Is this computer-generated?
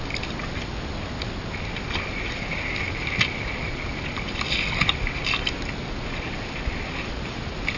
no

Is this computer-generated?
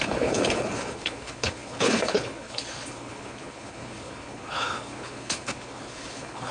yes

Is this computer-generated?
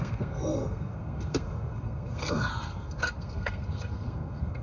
yes